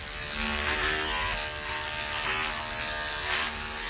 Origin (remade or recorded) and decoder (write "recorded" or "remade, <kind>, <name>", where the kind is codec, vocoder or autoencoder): recorded